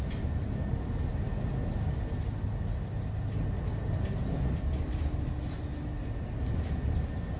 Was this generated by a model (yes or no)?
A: no